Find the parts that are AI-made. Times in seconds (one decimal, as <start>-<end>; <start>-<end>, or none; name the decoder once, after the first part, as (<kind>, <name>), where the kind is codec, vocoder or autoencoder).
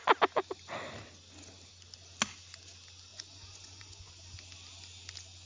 3.1-4.1 (vocoder, Vocos)